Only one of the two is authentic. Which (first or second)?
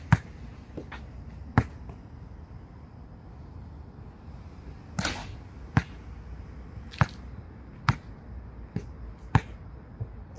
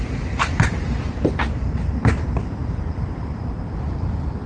first